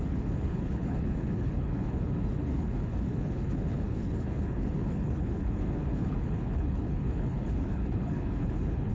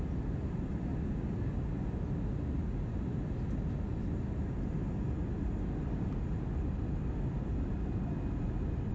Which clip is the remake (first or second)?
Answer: first